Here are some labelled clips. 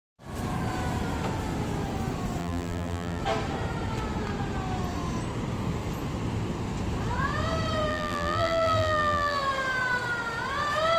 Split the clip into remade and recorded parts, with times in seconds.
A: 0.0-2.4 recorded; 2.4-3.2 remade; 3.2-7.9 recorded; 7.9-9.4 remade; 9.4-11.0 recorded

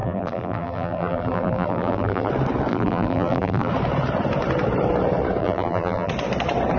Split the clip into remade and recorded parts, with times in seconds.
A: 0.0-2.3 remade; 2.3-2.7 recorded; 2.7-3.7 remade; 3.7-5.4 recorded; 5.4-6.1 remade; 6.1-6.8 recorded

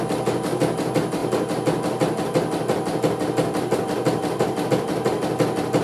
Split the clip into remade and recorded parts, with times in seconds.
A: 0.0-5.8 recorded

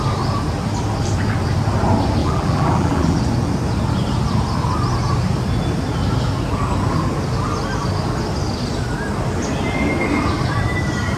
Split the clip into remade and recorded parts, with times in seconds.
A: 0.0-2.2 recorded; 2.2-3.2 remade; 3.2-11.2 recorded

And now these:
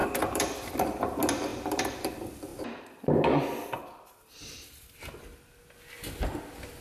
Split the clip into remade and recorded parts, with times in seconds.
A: 0.0-0.7 remade; 0.7-1.5 recorded; 1.5-2.1 remade; 2.1-6.8 recorded

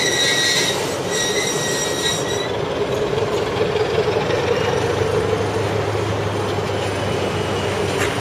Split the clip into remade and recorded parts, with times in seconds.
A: 0.0-1.0 recorded; 1.0-2.1 remade; 2.1-8.2 recorded